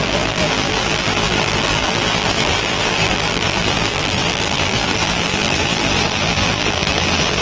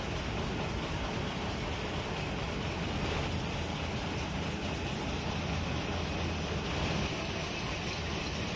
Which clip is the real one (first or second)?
second